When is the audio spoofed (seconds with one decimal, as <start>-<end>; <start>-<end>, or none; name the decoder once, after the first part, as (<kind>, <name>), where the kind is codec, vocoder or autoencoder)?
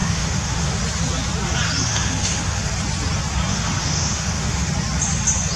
0.0-0.8 (autoencoder, DAC-VAE); 1.9-2.7; 3.5-4.7